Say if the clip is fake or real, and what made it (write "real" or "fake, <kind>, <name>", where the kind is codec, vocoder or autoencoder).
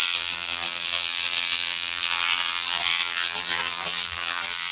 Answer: fake, vocoder, BigVGAN v2